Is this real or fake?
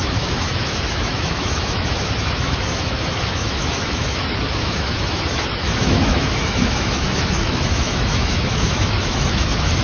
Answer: fake